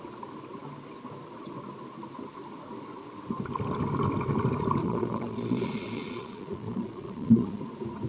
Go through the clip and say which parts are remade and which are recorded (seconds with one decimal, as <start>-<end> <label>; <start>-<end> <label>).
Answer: 0.0-4.8 recorded; 4.8-7.6 remade; 7.6-8.1 recorded